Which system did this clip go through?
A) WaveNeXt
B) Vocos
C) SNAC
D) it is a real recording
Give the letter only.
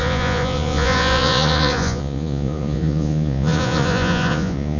B